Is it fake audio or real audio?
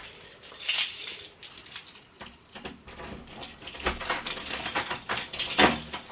real